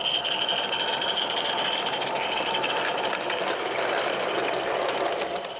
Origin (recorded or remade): recorded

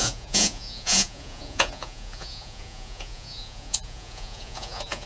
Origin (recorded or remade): remade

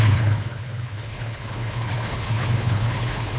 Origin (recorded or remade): remade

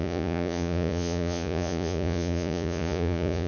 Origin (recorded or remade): remade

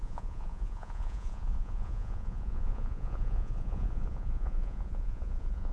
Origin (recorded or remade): remade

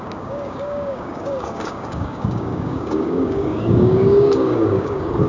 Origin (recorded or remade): remade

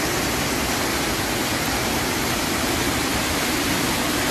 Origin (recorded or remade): recorded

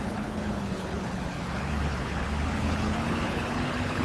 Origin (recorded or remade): remade